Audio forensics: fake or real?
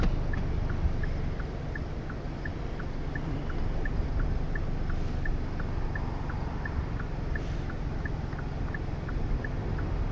real